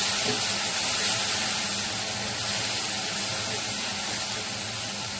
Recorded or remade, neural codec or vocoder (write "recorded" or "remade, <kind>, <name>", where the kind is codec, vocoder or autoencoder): recorded